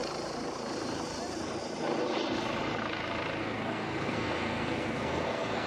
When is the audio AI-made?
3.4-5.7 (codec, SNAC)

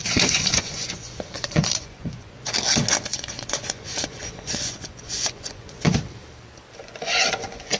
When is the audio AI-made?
0.0-2.5 (vocoder, Vocos); 3.1-5.9; 6.8-7.8